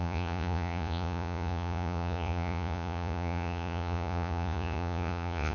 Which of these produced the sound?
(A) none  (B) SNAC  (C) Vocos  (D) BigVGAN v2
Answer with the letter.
C